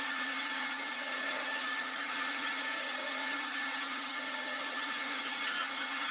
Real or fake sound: fake